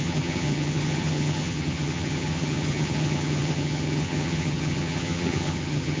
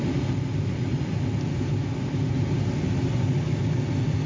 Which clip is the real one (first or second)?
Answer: second